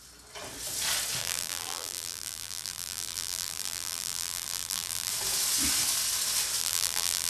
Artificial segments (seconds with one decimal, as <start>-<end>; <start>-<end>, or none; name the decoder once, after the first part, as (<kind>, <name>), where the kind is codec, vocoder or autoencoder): 1.2-5.1 (vocoder, BigVGAN v2); 6.6-7.3